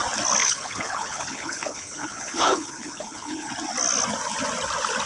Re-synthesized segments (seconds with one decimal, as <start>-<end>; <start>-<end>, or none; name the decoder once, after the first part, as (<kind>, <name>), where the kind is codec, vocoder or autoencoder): 0.4-3.5 (codec, HILCodec)